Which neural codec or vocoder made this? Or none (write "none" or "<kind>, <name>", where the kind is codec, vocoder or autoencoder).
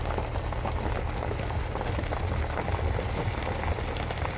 none